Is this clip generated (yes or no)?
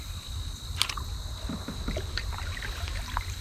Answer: no